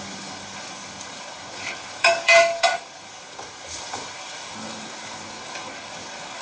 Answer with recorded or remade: remade